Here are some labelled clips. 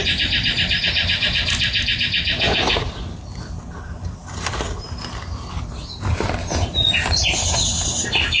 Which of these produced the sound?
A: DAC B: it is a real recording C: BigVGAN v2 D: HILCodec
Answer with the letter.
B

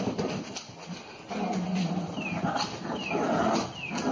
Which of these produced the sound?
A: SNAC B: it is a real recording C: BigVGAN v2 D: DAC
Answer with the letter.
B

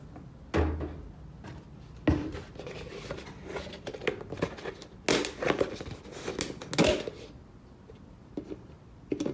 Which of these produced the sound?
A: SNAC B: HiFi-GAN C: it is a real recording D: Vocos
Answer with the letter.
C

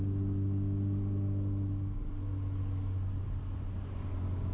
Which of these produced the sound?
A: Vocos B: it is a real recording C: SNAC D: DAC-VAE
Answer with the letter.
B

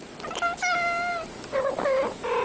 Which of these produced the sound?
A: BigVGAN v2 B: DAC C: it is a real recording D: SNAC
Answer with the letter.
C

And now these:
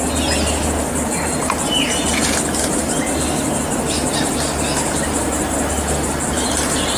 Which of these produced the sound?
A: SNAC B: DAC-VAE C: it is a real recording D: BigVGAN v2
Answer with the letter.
C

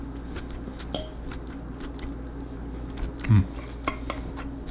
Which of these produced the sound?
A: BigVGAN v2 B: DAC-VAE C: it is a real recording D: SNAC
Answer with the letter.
C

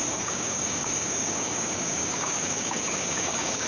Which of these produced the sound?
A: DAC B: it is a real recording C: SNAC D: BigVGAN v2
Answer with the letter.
A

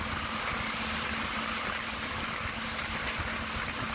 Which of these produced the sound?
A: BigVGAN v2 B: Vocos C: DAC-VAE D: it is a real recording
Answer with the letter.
D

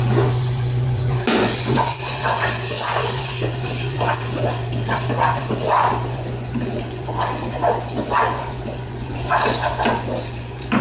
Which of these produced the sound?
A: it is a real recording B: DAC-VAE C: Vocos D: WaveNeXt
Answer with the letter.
C